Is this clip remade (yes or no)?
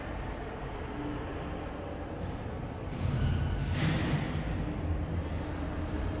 no